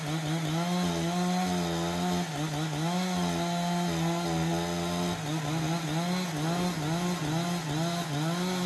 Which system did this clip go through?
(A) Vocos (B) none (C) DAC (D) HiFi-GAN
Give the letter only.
B